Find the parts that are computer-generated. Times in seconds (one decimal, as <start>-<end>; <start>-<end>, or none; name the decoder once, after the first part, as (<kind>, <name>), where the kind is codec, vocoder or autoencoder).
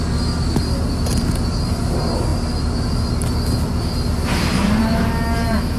none